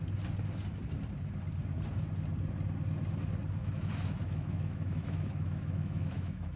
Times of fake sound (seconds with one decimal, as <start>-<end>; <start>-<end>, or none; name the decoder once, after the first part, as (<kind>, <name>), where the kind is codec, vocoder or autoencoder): 3.6-6.6 (autoencoder, DAC-VAE)